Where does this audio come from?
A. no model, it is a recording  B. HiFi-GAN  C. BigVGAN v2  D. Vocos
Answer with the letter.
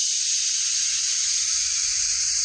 A